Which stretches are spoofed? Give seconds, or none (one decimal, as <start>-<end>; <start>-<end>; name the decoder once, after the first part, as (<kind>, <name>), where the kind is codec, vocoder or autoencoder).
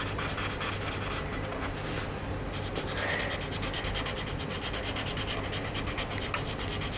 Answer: none